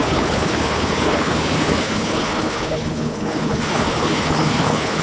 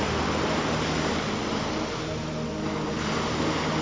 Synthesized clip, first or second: first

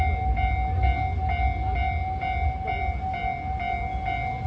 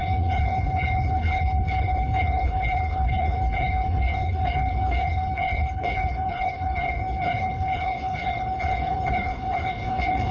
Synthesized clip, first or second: second